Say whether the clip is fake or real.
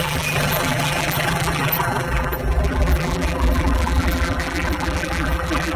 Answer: fake